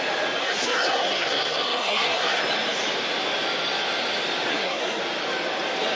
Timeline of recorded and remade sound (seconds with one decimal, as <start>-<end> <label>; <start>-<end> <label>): 0.0-0.4 recorded; 0.4-2.4 remade; 2.4-4.5 recorded; 4.5-5.0 remade; 5.0-6.0 recorded